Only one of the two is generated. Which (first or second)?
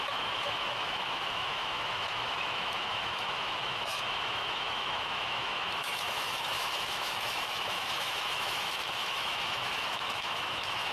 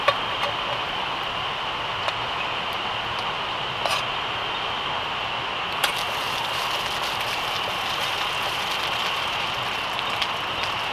first